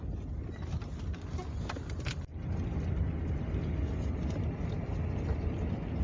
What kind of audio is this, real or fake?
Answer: real